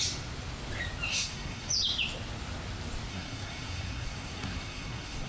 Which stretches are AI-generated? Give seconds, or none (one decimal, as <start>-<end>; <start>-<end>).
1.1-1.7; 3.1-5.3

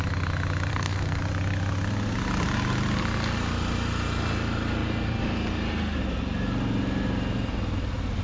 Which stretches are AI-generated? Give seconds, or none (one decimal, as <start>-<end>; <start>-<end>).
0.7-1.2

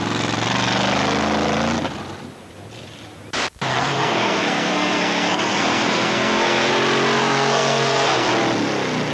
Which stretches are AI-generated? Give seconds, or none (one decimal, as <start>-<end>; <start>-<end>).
3.7-6.7; 7.2-8.3

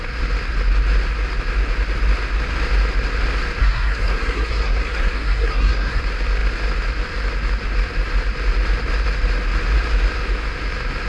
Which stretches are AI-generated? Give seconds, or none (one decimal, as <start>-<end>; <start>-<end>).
3.6-6.0

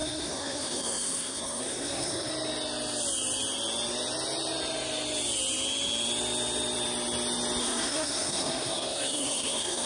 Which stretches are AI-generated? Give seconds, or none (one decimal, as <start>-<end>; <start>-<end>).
0.0-2.3; 7.6-9.9